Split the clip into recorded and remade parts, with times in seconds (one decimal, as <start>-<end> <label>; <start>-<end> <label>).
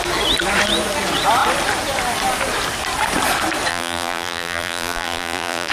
0.0-3.7 recorded; 3.7-5.7 remade